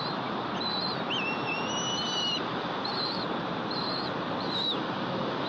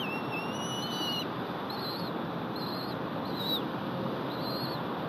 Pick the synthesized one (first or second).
first